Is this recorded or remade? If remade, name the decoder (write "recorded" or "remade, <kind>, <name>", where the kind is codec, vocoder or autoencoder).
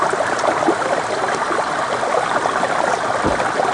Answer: recorded